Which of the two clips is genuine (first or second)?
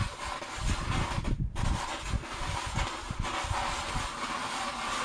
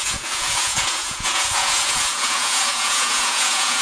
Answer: first